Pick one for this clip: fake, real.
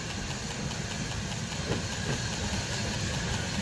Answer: real